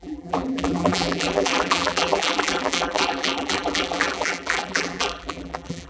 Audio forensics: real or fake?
fake